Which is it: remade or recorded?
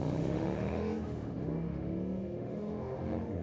remade